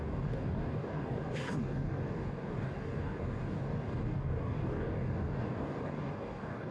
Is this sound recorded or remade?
remade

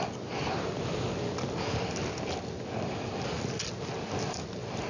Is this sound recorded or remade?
recorded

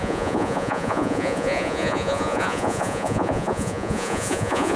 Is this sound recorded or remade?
remade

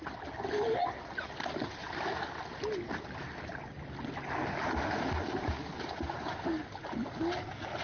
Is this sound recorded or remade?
recorded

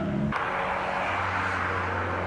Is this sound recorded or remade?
recorded